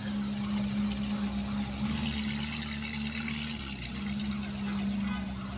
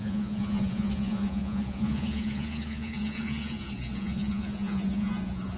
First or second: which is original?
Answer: first